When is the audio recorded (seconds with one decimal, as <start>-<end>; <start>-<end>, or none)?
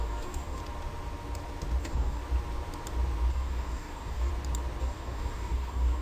0.6-1.8; 2.2-3.3; 4.3-4.8